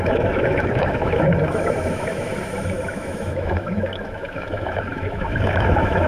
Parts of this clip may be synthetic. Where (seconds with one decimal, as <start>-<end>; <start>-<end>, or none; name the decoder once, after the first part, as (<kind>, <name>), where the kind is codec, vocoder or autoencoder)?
0.0-6.1 (autoencoder, DAC-VAE)